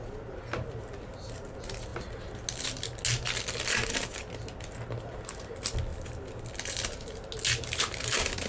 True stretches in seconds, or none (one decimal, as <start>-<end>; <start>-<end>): 0.0-8.5